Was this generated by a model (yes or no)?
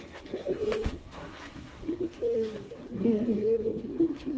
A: yes